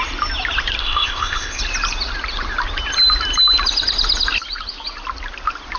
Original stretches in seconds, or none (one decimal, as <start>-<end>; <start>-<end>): 0.0-0.8; 1.6-5.8